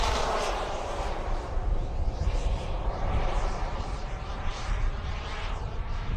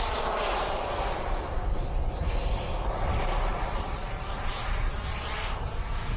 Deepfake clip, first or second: first